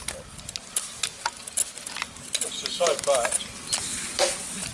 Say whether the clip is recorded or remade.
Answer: recorded